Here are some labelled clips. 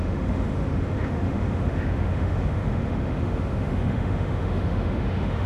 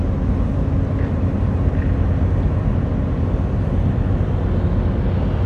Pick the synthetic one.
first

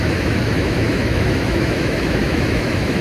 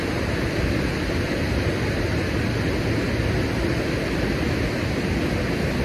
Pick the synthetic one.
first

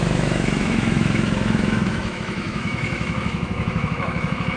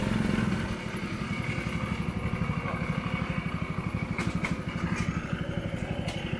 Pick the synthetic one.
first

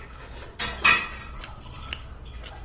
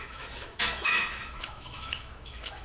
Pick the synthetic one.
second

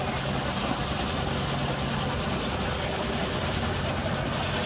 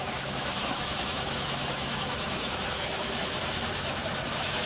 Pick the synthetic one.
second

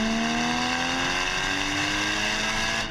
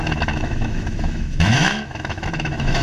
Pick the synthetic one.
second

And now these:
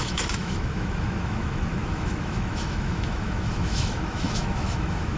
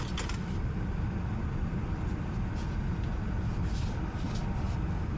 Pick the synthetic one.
first